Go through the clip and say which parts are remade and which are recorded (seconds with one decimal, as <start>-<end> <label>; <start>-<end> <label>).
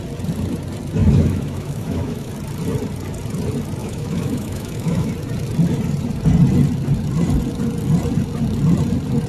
0.0-1.0 recorded; 1.0-2.3 remade; 2.3-3.8 recorded; 3.8-5.1 remade; 5.1-9.3 recorded